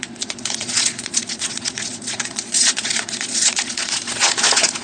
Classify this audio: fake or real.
fake